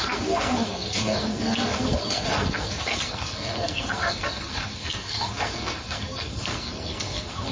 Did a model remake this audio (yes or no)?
yes